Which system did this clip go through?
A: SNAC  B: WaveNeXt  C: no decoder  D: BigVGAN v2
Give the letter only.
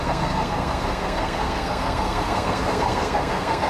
A